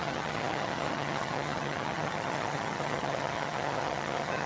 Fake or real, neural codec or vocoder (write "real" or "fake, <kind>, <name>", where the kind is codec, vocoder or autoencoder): fake, vocoder, HiFi-GAN